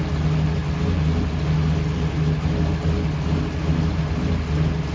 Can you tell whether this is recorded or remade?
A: recorded